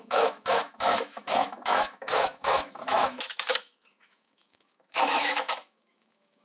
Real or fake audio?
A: fake